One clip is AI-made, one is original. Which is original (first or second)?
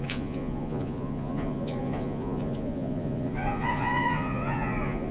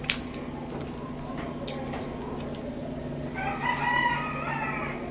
second